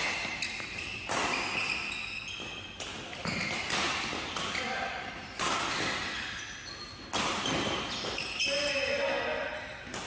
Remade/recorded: recorded